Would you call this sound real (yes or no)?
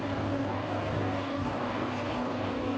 no